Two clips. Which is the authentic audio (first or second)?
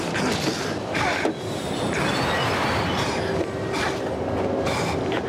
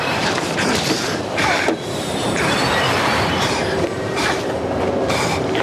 first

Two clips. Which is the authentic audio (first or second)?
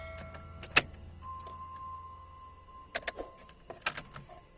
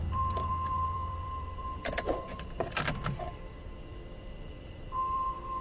first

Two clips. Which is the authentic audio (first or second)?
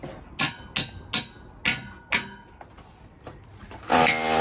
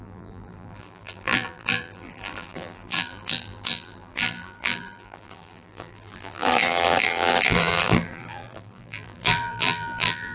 first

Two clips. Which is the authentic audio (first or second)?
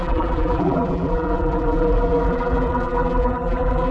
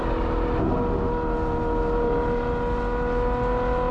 second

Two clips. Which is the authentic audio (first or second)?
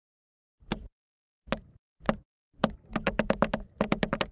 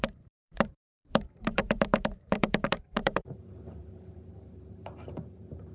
first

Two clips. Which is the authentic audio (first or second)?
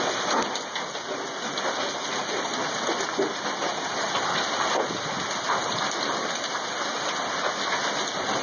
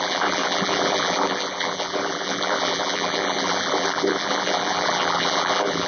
first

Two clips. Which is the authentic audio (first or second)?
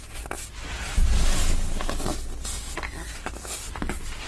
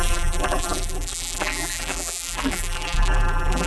first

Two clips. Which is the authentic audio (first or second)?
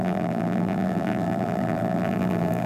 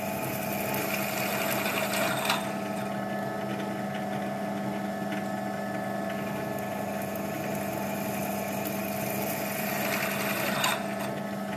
second